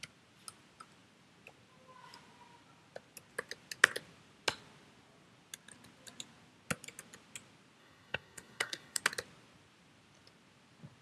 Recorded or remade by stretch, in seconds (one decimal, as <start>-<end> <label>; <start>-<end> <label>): 0.0-7.8 recorded; 7.8-9.0 remade; 9.0-11.0 recorded